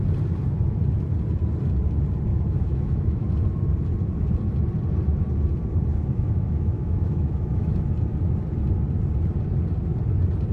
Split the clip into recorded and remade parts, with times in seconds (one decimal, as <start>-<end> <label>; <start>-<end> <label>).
0.0-2.3 recorded; 2.3-3.3 remade; 3.3-5.9 recorded; 5.9-7.9 remade; 7.9-10.5 recorded